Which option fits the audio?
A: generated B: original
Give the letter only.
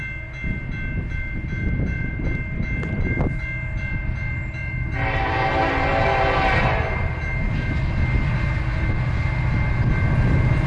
B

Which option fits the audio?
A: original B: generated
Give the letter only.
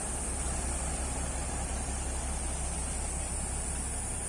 A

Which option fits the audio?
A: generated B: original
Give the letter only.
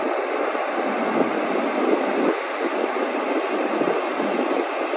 B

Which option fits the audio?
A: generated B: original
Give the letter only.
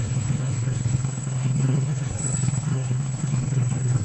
A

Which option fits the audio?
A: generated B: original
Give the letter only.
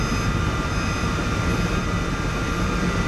B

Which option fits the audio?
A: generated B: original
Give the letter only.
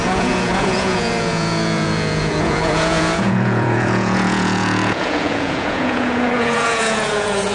A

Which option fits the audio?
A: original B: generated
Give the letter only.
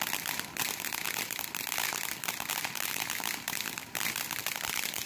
B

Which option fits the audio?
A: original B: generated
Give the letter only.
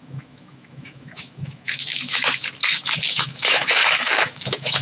B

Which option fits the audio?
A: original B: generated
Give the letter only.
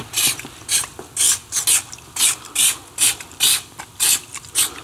A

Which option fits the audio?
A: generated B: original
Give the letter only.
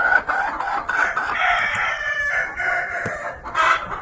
B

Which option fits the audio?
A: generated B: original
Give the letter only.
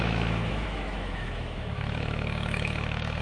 A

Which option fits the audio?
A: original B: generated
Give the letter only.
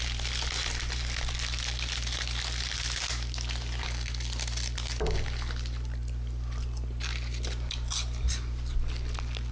A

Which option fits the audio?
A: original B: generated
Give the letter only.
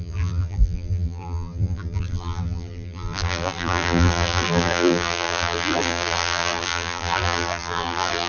B